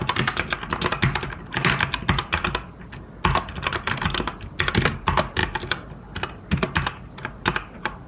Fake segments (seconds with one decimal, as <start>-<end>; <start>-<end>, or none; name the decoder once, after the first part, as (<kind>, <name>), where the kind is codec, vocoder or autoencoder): none